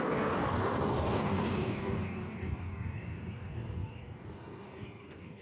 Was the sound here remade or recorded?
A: remade